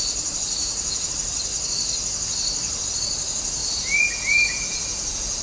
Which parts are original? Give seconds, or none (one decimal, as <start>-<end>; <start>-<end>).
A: 0.0-0.6; 1.1-3.6